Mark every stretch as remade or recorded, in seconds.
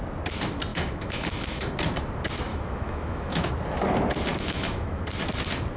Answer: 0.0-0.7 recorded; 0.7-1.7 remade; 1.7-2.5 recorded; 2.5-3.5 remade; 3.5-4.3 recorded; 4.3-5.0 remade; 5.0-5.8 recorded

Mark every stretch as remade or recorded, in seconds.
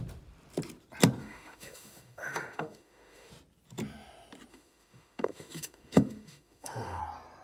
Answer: 0.0-1.2 recorded; 1.2-3.3 remade; 3.3-4.5 recorded; 4.5-7.0 remade; 7.0-7.4 recorded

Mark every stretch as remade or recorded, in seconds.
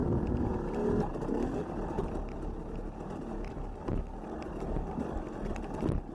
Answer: 0.0-6.1 recorded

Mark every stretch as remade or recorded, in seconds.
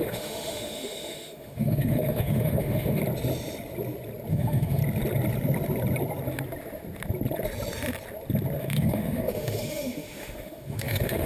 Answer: 0.0-3.0 remade; 3.0-4.3 recorded; 4.3-4.8 remade; 4.8-8.6 recorded; 8.6-11.3 remade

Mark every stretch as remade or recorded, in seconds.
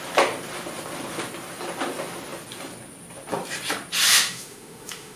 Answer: 0.0-4.1 recorded; 4.1-5.2 remade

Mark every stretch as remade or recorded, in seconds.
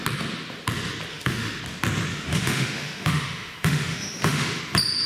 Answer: 0.0-1.1 recorded; 1.1-1.6 remade; 1.6-2.1 recorded; 2.1-4.6 remade; 4.6-5.1 recorded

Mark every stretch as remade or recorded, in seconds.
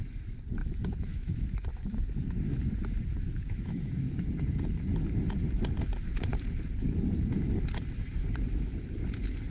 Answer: 0.0-0.6 recorded; 0.6-3.9 remade; 3.9-9.5 recorded